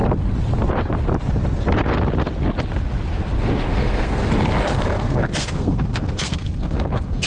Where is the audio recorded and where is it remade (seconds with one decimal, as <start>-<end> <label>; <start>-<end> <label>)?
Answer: 0.0-3.7 recorded; 3.7-4.3 remade; 4.3-4.7 recorded; 4.7-7.3 remade